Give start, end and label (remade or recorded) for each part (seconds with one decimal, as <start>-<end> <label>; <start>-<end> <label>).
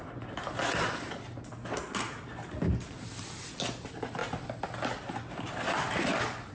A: 0.0-6.5 recorded